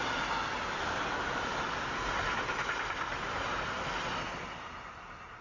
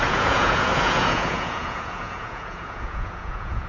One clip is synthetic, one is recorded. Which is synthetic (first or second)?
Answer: second